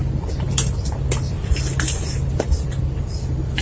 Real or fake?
fake